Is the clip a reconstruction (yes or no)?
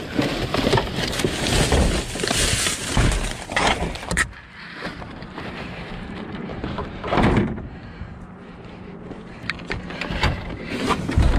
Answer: yes